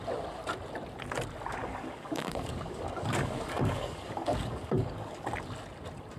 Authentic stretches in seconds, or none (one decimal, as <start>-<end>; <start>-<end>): 0.0-1.6; 5.3-6.2